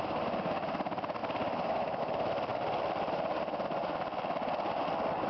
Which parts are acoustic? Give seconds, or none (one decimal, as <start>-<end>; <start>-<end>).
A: 0.0-5.3